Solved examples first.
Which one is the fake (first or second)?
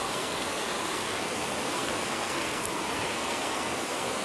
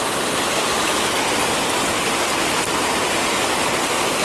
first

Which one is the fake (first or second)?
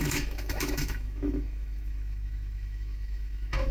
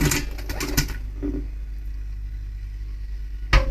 first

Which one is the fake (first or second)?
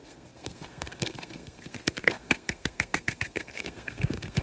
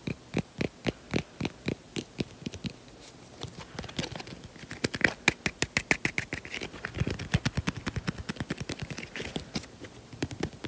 first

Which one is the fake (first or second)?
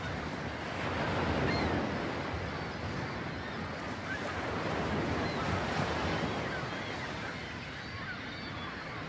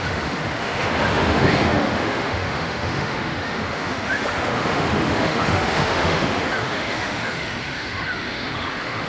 second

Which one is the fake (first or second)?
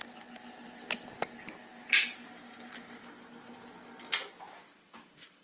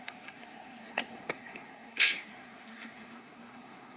second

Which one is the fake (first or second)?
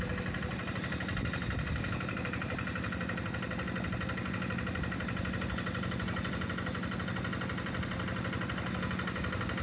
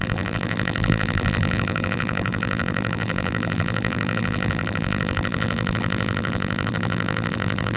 second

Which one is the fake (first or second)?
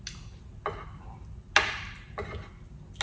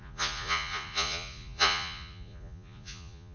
second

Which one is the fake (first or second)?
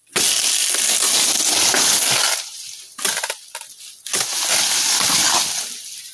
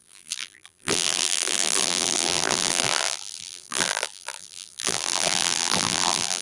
second